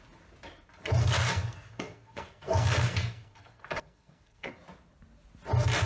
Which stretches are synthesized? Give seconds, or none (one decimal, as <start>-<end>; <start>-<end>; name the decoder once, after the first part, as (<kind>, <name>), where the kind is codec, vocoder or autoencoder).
1.0-4.5 (codec, SNAC)